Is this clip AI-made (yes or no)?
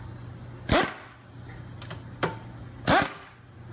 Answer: no